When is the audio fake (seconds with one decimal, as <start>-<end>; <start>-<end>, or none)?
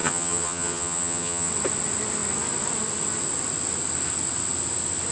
0.0-1.5